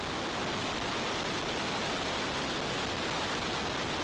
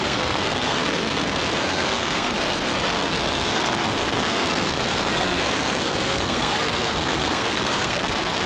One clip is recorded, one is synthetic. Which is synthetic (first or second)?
second